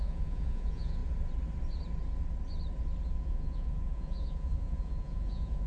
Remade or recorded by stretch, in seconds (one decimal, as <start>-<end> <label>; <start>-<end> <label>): 0.0-1.0 remade; 1.0-3.1 recorded; 3.1-5.7 remade